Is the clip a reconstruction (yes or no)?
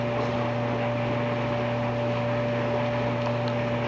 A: no